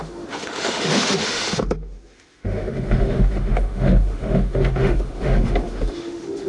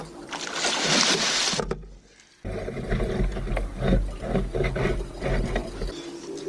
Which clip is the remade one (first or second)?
first